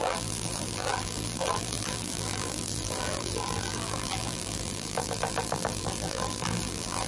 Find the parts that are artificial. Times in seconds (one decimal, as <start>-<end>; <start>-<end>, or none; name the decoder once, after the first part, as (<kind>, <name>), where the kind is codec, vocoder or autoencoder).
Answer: 0.0-7.1 (vocoder, BigVGAN v2)